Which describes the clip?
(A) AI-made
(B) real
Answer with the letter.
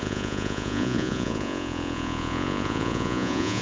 A